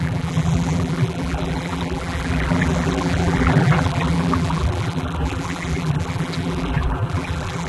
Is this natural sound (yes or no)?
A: no